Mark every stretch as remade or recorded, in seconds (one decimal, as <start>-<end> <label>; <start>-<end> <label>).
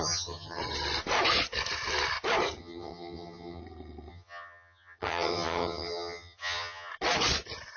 0.0-0.6 remade; 0.6-2.6 recorded; 2.6-3.6 remade; 3.6-4.1 recorded; 4.1-6.9 remade; 6.9-7.8 recorded